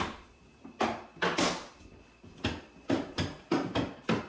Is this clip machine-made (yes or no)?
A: no